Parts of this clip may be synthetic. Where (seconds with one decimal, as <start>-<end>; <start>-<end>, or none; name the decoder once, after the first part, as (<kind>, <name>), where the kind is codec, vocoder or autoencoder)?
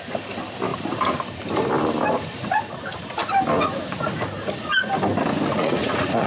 5.5-6.3 (vocoder, Vocos)